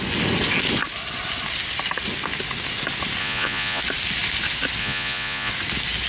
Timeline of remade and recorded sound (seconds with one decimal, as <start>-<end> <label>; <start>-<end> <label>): 0.0-3.2 recorded; 3.2-3.8 remade; 3.8-4.8 recorded; 4.8-5.5 remade; 5.5-6.1 recorded